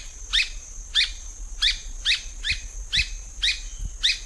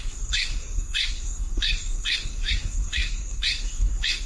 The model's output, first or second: second